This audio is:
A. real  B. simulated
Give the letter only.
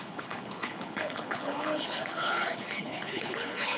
B